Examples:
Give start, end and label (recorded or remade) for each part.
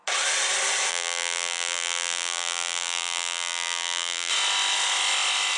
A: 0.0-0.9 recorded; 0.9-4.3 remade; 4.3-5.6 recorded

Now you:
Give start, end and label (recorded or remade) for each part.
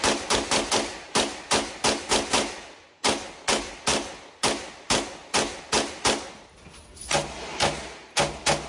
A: 0.0-8.7 recorded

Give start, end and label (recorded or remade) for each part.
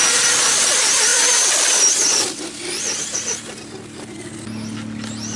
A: 0.0-1.1 recorded; 1.1-4.3 remade; 4.3-5.4 recorded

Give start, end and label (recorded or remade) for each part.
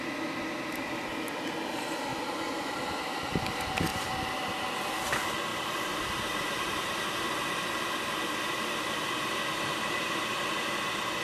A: 0.0-2.1 recorded; 2.1-2.8 remade; 2.8-5.5 recorded; 5.5-7.5 remade; 7.5-11.2 recorded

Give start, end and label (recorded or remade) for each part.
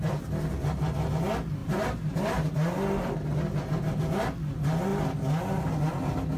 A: 0.0-1.6 recorded; 1.6-3.4 remade; 3.4-6.4 recorded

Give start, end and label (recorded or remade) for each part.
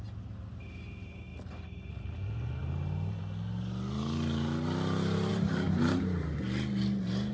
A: 0.0-5.3 recorded; 5.3-6.3 remade; 6.3-7.3 recorded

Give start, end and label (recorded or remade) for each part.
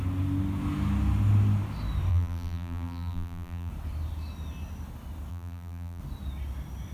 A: 0.0-2.1 recorded; 2.1-3.7 remade; 3.7-5.3 recorded; 5.3-6.0 remade; 6.0-6.9 recorded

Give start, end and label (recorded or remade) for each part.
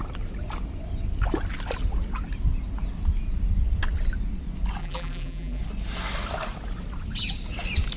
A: 0.0-4.8 recorded; 4.8-5.6 remade; 5.6-8.0 recorded